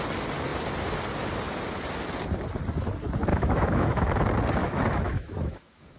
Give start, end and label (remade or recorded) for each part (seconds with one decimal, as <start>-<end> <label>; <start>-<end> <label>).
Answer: 0.0-3.3 recorded; 3.3-4.1 remade; 4.1-4.6 recorded; 4.6-6.0 remade